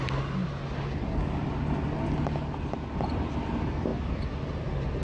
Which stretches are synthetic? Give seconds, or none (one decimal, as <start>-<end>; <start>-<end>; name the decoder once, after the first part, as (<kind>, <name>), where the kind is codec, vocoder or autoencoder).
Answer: none